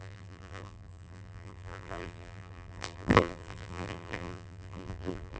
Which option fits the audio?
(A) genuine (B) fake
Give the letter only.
B